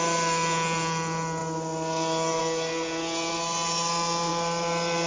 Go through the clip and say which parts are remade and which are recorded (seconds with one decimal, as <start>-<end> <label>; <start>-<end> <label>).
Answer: 0.0-5.1 recorded